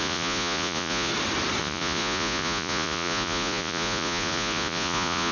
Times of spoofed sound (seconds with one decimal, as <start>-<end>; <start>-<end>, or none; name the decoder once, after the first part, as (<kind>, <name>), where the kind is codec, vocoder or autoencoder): 0.0-1.1 (vocoder, Vocos); 1.6-5.3